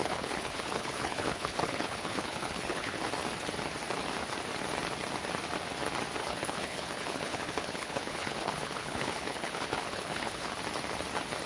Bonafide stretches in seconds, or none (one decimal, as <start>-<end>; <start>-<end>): 3.1-6.2; 10.6-11.5